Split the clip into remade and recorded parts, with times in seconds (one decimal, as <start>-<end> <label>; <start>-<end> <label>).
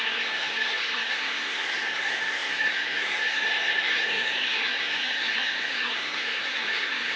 0.0-7.2 remade